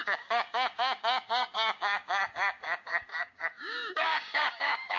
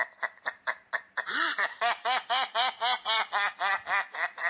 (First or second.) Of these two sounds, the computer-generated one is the first